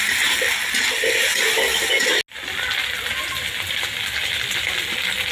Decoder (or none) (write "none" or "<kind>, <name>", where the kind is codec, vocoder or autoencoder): none